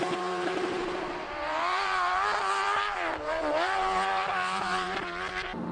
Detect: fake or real fake